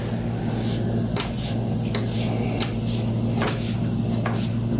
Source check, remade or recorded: recorded